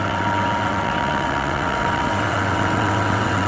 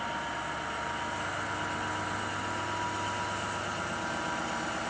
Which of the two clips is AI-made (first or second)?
first